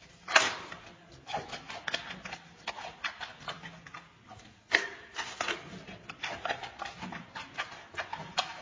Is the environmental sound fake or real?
real